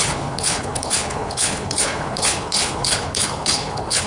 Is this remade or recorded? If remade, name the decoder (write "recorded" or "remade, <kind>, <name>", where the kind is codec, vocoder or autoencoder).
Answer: remade, codec, HILCodec